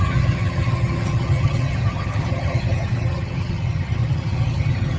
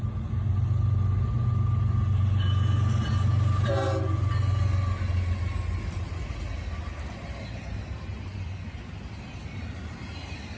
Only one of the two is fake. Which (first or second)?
first